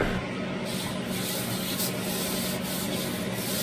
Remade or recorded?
recorded